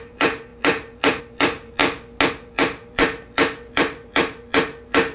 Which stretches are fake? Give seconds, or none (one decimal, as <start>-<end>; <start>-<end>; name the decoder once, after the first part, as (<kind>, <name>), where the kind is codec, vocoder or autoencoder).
0.0-1.8 (vocoder, BigVGAN v2); 2.3-5.1